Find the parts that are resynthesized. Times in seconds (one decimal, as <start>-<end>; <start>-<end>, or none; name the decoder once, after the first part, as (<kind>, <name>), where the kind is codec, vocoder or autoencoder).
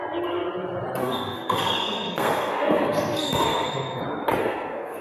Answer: 1.0-4.0 (codec, SNAC); 4.4-5.0